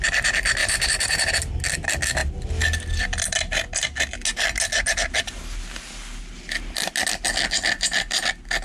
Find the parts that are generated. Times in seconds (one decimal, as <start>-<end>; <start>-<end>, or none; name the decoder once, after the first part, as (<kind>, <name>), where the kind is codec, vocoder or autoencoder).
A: 0.6-1.3 (vocoder, BigVGAN v2)